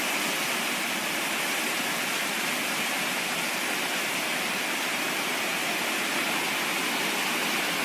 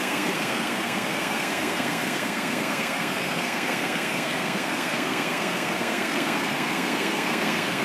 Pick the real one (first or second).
first